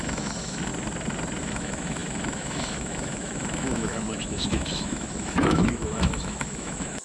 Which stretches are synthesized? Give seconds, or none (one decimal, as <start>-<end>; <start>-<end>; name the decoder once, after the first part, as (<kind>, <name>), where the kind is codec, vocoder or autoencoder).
0.0-0.7 (autoencoder, DAC-VAE); 1.4-7.0